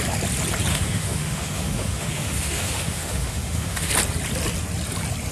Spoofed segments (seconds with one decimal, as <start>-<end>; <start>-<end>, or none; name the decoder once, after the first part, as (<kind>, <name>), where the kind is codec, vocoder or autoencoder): 0.7-3.9 (autoencoder, DAC-VAE)